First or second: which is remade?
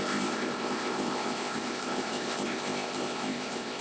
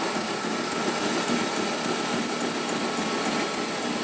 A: first